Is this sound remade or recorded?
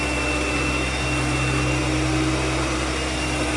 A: recorded